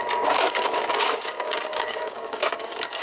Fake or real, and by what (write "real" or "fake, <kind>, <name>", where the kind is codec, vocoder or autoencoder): fake, codec, DAC